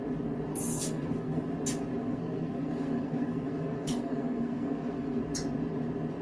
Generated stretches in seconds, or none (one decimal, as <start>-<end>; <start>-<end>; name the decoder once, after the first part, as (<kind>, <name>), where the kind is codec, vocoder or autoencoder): 0.5-1.4 (codec, SNAC); 2.0-5.2